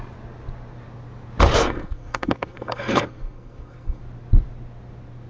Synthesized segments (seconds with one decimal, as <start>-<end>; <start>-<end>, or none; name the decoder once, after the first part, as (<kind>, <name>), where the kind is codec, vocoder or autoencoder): 1.6-4.0 (codec, SNAC)